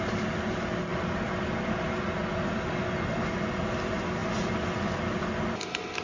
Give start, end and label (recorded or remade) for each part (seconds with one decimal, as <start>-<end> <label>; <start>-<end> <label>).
0.0-6.0 recorded